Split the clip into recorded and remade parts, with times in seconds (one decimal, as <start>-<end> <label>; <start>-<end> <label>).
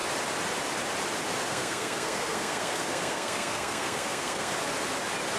0.0-1.5 recorded; 1.5-4.5 remade; 4.5-5.4 recorded